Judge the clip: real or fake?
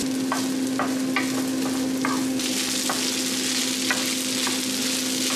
real